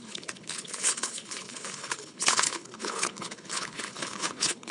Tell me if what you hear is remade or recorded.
remade